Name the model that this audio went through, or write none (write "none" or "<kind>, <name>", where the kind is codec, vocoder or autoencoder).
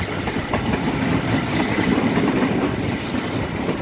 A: none